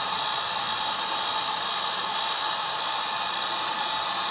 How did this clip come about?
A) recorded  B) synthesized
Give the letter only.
A